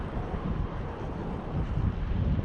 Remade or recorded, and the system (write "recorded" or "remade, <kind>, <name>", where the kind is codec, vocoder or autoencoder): remade, vocoder, BigVGAN v2